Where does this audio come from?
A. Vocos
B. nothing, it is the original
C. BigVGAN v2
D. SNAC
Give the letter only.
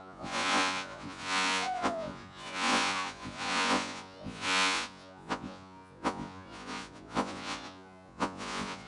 A